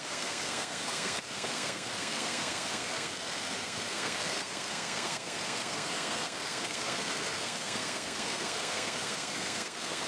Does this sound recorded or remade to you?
remade